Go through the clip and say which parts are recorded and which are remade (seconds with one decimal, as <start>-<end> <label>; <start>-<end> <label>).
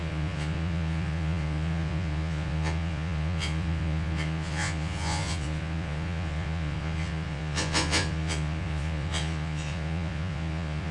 0.0-10.9 remade